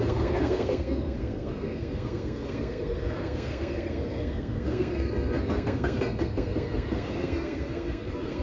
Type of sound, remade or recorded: remade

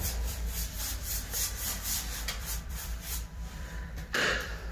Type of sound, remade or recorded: remade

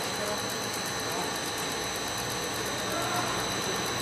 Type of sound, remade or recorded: recorded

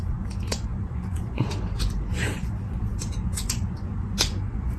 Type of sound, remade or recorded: remade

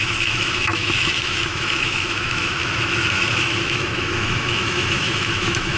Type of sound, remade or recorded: remade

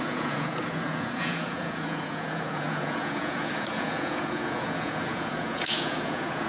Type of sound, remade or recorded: remade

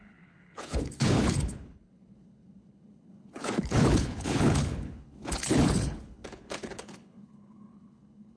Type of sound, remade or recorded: remade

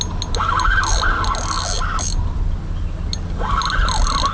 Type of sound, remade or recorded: recorded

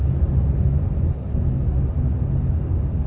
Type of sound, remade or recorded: recorded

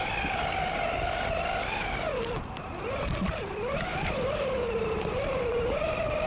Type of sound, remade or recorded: recorded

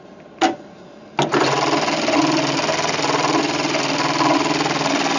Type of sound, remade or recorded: recorded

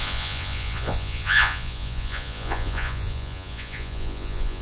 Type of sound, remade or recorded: remade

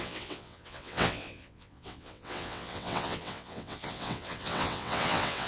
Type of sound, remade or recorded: remade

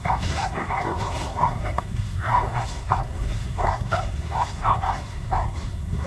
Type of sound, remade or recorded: remade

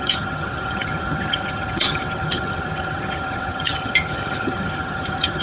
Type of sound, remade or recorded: remade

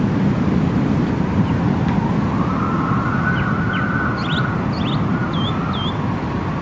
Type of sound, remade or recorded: recorded